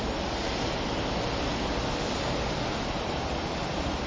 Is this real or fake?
real